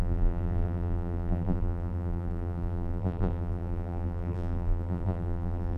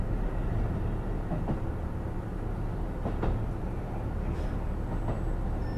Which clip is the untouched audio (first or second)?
second